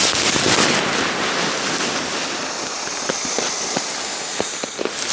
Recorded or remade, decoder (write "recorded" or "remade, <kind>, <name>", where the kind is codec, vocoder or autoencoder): recorded